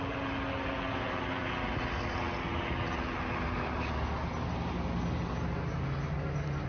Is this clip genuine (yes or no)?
yes